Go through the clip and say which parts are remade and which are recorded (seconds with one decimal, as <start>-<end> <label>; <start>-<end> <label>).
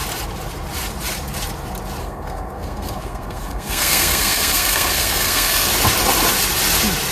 0.0-2.0 recorded; 2.0-5.7 remade; 5.7-7.1 recorded